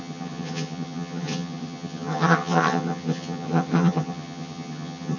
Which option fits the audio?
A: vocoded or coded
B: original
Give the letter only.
A